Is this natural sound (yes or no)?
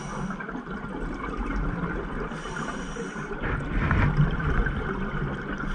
yes